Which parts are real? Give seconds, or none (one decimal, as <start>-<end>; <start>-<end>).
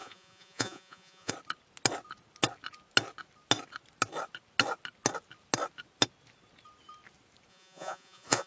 1.3-7.5